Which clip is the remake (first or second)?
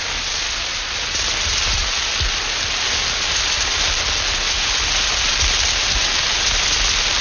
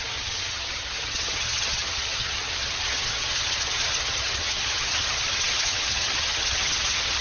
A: second